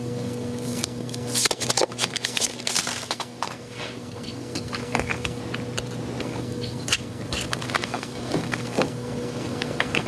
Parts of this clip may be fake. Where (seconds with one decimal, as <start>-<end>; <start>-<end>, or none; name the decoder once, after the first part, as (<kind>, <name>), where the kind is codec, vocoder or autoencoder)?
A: 0.0-5.4 (codec, SNAC); 6.2-10.1